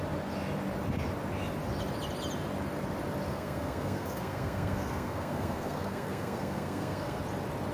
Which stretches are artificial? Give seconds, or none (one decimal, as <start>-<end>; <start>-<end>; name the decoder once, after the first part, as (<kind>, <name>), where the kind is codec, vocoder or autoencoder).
3.3-7.2 (codec, SNAC)